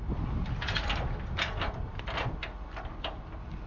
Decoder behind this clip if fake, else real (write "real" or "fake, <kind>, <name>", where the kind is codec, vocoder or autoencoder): real